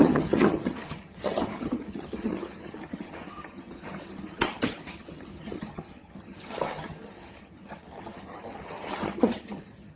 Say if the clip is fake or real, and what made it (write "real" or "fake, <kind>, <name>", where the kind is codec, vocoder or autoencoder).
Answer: fake, vocoder, HiFi-GAN